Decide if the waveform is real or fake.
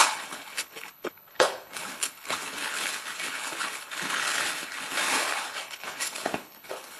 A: fake